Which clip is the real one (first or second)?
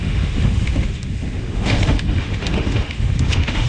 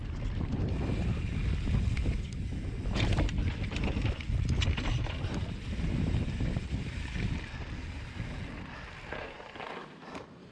second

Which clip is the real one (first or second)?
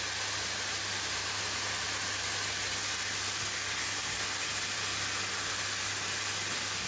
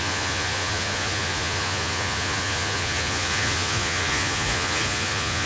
first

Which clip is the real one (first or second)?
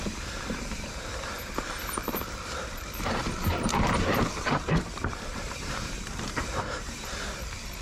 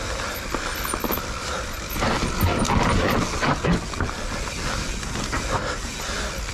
second